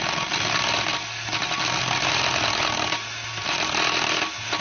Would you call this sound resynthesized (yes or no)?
no